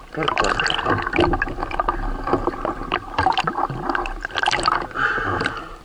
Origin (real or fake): real